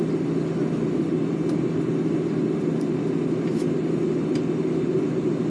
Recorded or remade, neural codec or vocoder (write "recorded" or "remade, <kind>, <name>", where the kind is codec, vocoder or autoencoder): recorded